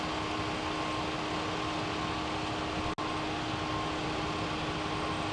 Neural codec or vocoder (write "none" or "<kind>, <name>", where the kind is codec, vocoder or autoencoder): none